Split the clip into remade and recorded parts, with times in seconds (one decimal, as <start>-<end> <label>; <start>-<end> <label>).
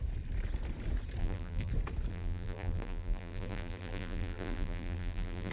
0.0-1.2 recorded; 1.2-1.7 remade; 1.7-2.1 recorded; 2.1-5.5 remade